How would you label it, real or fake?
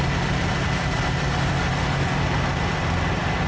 fake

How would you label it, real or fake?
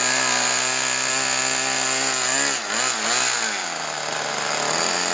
real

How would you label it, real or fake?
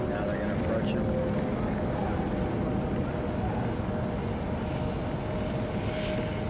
real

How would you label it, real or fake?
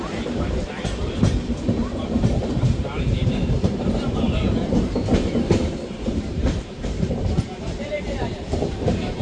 fake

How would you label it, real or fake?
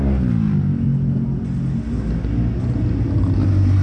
real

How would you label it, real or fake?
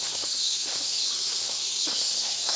fake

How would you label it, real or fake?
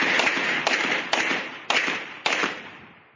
fake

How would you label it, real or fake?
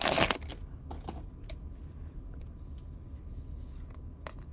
real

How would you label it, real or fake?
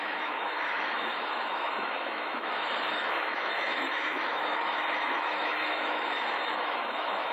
fake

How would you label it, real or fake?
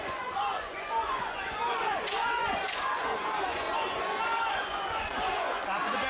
fake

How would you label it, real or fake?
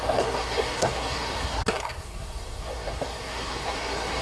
fake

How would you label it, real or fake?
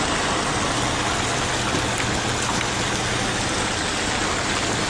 real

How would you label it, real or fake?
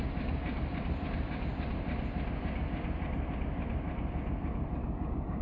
real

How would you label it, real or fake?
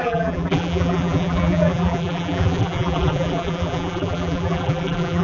fake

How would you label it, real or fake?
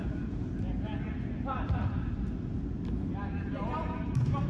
real